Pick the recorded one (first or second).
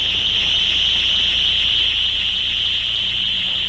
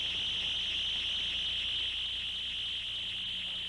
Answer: second